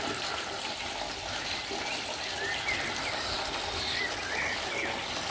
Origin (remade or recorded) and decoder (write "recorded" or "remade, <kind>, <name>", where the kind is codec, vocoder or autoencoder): recorded